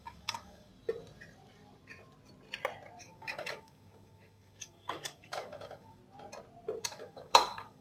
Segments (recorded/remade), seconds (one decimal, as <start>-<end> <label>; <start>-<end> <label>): 0.0-0.7 remade; 0.7-3.0 recorded; 3.0-6.0 remade; 6.0-6.8 recorded; 6.8-7.8 remade